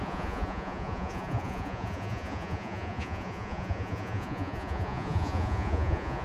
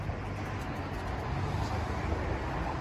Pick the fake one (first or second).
first